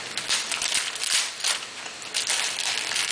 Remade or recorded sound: remade